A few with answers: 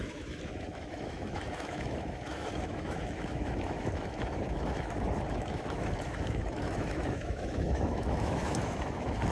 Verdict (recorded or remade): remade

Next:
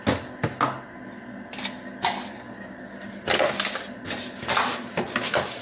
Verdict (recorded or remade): recorded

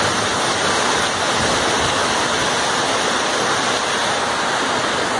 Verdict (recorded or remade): recorded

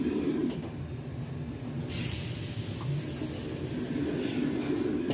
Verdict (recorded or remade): recorded